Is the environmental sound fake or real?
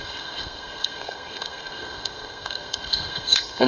fake